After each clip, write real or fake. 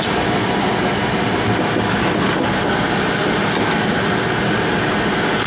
real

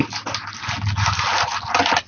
real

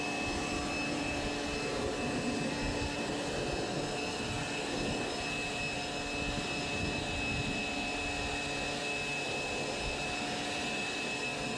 real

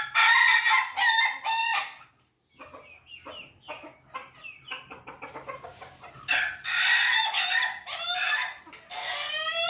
real